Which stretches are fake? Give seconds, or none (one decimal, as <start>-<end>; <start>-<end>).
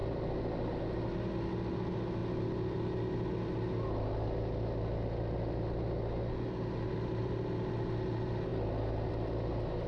none